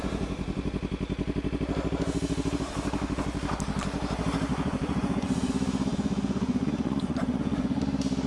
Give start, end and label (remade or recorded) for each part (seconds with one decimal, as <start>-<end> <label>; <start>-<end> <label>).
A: 0.0-4.5 recorded; 4.5-5.5 remade; 5.5-5.9 recorded; 5.9-7.8 remade; 7.8-8.3 recorded